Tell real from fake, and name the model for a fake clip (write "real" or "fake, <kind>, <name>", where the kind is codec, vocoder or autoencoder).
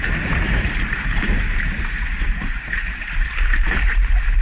fake, vocoder, BigVGAN v2